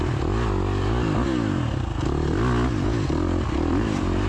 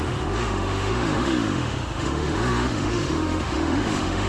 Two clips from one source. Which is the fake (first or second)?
second